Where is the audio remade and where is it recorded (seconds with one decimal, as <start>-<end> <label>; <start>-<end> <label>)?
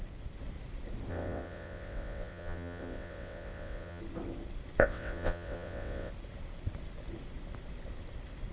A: 0.0-1.1 recorded; 1.1-4.0 remade; 4.0-4.8 recorded; 4.8-6.1 remade; 6.1-8.5 recorded